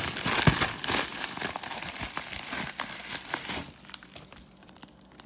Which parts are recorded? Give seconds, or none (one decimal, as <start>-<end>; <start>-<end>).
none